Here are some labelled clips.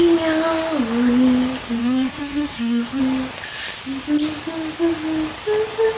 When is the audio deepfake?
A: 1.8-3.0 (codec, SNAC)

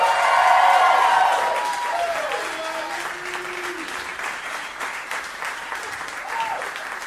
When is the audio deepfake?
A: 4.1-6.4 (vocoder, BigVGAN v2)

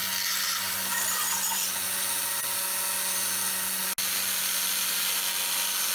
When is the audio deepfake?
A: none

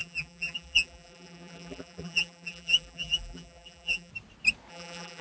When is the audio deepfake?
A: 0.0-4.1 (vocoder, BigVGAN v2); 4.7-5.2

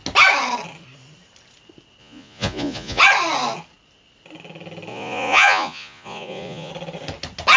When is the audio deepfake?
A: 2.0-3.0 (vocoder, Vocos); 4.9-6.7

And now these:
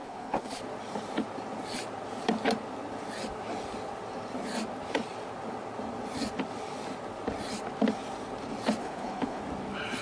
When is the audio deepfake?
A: 0.0-0.6 (codec, HILCodec); 8.8-9.4

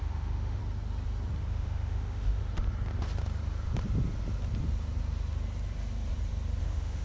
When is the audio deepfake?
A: 0.0-0.6 (autoencoder, DAC-VAE); 1.4-2.4; 6.6-7.0

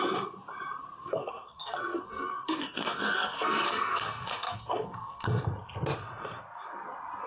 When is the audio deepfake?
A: 1.0-5.4 (codec, SNAC)